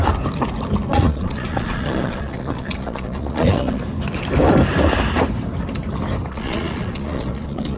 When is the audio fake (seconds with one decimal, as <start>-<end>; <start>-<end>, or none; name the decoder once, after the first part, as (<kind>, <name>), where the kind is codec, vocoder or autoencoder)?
0.9-3.8 (vocoder, Vocos); 6.3-7.8

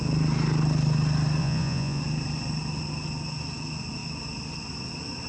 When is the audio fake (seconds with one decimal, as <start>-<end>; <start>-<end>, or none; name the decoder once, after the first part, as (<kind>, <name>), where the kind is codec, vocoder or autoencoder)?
1.4-2.0 (vocoder, Vocos)

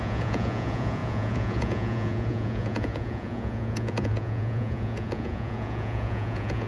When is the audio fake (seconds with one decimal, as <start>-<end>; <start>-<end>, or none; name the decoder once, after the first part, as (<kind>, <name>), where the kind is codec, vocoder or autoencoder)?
0.0-6.7 (vocoder, Vocos)

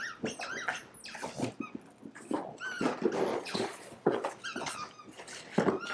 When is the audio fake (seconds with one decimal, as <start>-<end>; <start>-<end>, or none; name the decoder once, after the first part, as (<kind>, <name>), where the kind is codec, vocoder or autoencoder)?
3.3-4.3 (vocoder, Vocos)